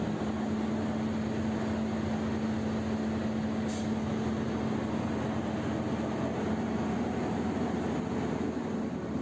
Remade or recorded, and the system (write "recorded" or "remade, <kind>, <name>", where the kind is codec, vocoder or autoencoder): recorded